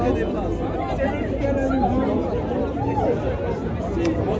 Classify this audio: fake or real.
real